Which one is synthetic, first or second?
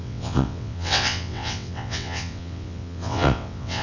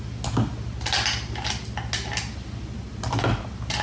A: first